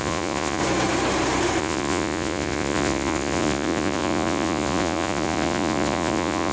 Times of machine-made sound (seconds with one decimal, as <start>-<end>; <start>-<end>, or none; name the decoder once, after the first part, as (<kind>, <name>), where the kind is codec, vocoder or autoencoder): 0.0-0.6 (vocoder, Vocos); 1.6-6.5